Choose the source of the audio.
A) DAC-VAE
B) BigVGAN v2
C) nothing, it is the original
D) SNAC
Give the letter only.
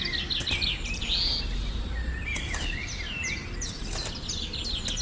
C